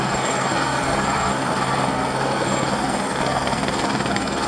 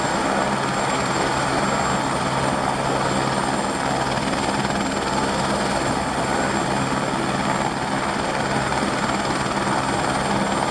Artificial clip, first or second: first